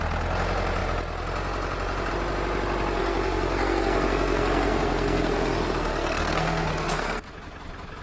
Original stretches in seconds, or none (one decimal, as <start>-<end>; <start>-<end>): 0.0-3.0; 7.3-8.0